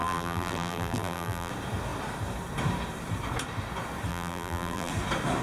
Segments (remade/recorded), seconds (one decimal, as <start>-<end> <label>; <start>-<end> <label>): 0.0-1.5 remade; 1.5-4.1 recorded; 4.1-4.9 remade; 4.9-5.4 recorded